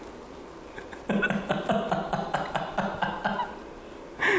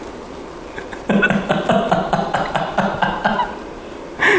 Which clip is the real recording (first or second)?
first